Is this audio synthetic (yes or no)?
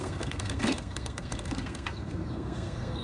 yes